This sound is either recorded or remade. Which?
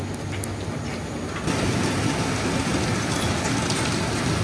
recorded